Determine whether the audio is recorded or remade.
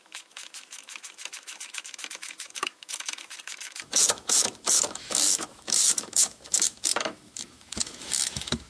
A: remade